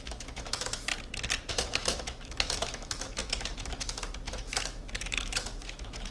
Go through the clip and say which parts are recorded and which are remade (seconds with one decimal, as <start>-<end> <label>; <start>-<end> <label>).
0.0-0.9 remade; 0.9-1.5 recorded; 1.5-6.1 remade